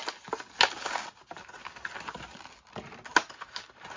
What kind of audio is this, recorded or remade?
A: recorded